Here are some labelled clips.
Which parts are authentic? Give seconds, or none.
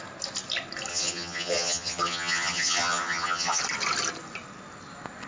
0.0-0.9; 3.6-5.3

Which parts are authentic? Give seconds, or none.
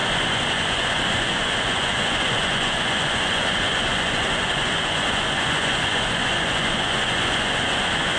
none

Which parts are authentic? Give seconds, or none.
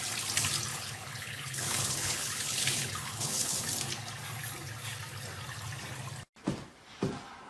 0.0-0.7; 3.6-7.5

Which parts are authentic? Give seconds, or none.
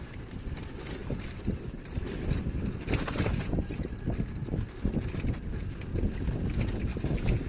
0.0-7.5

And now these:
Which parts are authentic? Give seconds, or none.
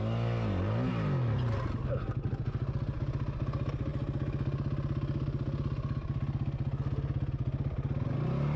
0.0-8.6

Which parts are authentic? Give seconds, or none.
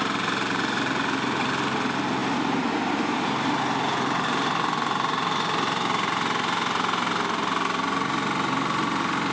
0.0-9.3